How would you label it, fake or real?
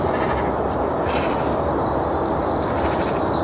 real